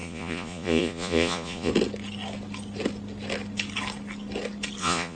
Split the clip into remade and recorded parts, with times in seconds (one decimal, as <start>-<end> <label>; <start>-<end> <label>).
0.0-1.7 remade; 1.7-4.8 recorded; 4.8-5.2 remade